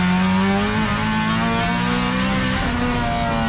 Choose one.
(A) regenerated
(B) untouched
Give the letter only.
B